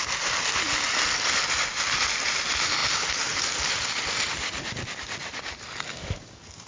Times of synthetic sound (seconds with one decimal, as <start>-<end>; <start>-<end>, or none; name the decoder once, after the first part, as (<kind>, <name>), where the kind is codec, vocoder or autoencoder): 5.9-6.7 (codec, DAC)